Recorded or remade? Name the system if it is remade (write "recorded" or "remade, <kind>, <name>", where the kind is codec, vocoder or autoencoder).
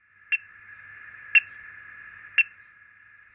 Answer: recorded